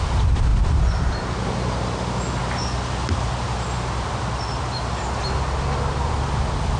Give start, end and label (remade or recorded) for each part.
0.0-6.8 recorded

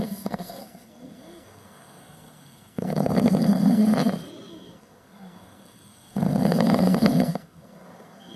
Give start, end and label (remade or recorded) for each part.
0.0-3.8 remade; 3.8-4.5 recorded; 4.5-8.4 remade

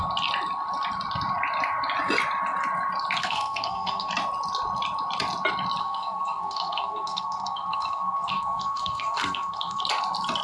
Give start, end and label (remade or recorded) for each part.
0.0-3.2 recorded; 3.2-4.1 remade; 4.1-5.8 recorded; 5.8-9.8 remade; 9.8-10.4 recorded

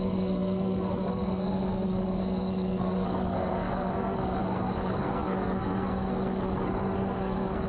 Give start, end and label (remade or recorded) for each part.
0.0-7.7 remade

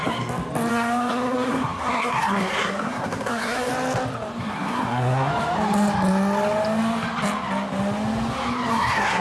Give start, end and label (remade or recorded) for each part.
0.0-0.7 recorded; 0.7-3.7 remade; 3.7-4.4 recorded; 4.4-5.3 remade; 5.3-8.7 recorded; 8.7-9.2 remade

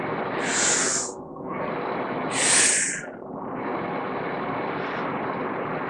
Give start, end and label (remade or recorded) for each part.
0.0-0.8 recorded; 0.8-1.7 remade; 1.7-5.9 recorded

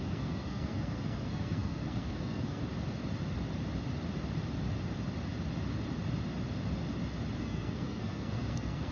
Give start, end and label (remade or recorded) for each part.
0.0-2.6 remade; 2.6-7.4 recorded; 7.4-8.9 remade

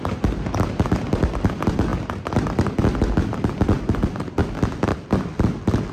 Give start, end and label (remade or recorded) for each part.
0.0-5.9 recorded